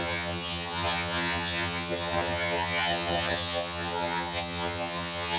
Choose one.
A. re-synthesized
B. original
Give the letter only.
A